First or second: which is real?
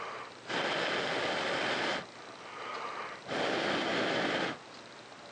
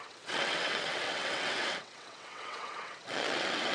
first